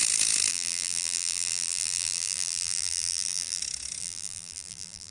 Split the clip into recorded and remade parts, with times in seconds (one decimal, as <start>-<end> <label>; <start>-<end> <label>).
0.0-0.5 recorded; 0.5-3.6 remade; 3.6-4.0 recorded; 4.0-5.1 remade